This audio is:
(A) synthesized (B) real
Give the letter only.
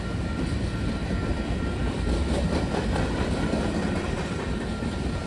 A